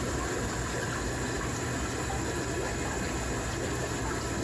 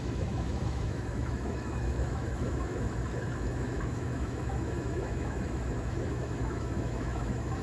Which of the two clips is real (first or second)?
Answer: first